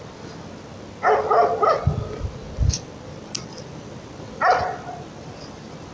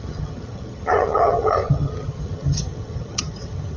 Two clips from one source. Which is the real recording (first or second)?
first